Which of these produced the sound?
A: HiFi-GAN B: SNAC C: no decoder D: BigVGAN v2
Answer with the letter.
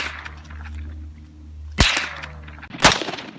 C